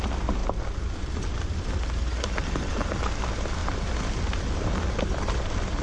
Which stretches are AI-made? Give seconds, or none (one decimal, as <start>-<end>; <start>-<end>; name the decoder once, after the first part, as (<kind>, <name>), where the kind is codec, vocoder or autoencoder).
none